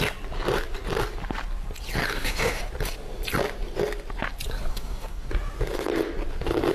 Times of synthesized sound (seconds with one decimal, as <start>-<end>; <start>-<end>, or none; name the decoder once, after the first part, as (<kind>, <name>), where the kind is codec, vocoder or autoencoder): 2.1-2.6 (codec, DAC); 4.7-5.3